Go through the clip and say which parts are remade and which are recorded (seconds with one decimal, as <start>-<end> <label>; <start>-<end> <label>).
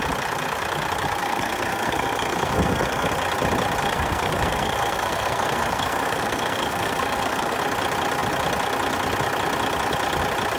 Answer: 0.0-1.2 recorded; 1.2-3.1 remade; 3.1-3.8 recorded; 3.8-7.6 remade; 7.6-10.6 recorded